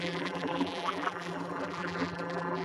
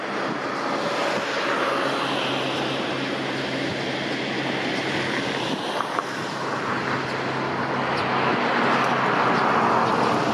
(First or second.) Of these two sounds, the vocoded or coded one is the first